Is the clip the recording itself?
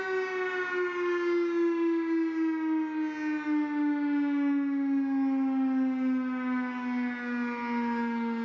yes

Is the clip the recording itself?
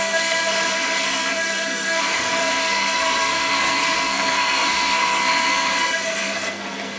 no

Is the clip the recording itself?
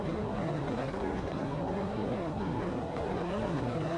no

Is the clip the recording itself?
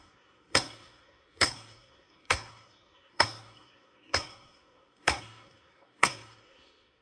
no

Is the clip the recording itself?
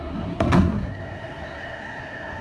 no